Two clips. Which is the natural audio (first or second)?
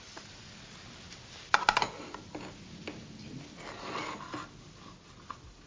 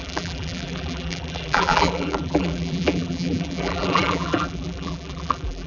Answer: first